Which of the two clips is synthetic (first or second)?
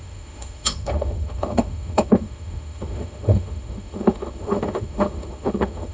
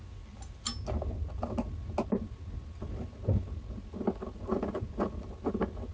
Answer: first